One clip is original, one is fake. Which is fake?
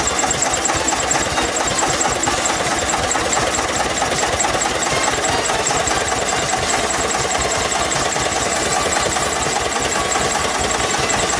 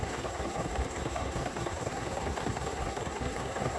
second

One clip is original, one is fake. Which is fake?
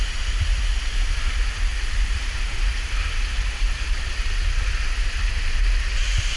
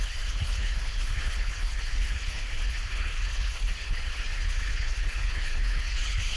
second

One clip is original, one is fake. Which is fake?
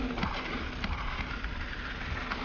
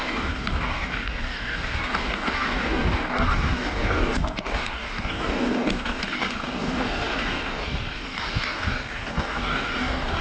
second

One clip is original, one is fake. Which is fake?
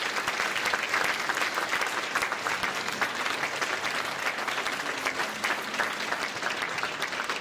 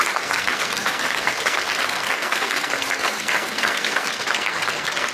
second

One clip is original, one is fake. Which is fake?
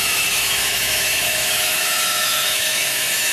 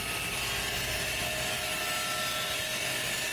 first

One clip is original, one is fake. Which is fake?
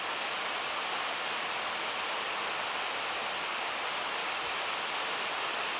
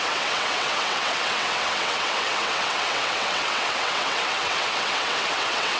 second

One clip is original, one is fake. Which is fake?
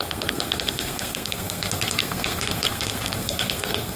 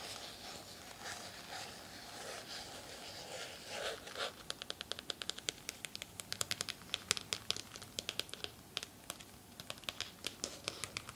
first